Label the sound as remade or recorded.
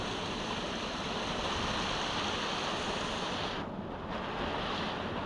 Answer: recorded